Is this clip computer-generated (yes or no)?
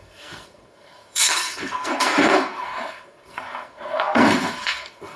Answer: yes